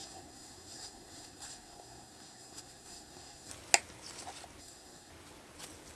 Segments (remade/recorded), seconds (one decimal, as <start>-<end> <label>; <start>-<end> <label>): 0.0-3.5 remade; 3.5-4.6 recorded; 4.6-5.1 remade; 5.1-6.0 recorded